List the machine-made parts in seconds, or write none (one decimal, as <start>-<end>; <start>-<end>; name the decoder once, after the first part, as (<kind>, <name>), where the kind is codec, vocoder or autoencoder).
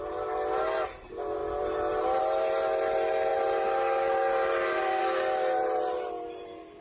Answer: none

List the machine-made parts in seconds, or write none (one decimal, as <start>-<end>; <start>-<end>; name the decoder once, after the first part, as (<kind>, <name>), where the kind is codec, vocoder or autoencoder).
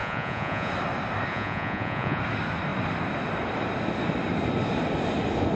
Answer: 0.0-0.7 (vocoder, Vocos); 1.3-2.2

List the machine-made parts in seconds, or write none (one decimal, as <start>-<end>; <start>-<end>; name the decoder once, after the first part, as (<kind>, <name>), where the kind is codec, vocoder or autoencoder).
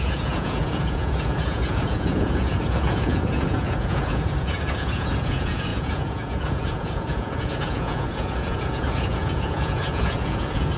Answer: 0.0-10.8 (vocoder, Vocos)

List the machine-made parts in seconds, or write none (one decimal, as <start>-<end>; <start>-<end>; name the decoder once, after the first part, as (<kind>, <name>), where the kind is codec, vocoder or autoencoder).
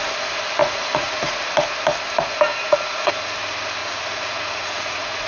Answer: 0.6-1.2 (vocoder, Vocos); 2.5-3.1; 3.8-5.3